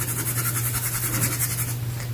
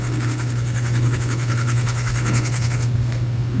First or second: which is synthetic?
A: second